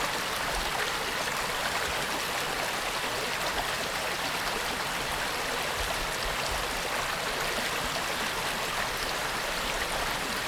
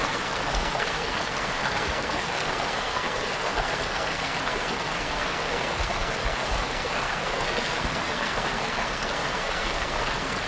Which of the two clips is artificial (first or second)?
second